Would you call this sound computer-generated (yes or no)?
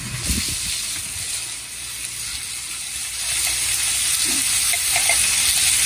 no